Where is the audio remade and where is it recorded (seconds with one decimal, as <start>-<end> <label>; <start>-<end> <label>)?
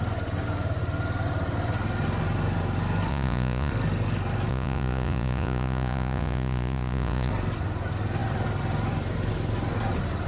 0.0-3.1 recorded; 3.1-3.7 remade; 3.7-4.5 recorded; 4.5-7.3 remade; 7.3-10.3 recorded